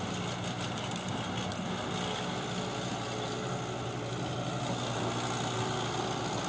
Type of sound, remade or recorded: recorded